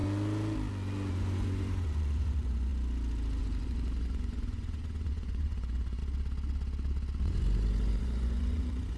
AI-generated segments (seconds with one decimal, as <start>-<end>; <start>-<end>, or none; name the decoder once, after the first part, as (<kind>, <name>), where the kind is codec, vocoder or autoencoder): 1.1-2.7 (vocoder, Vocos); 3.4-6.0; 7.2-9.0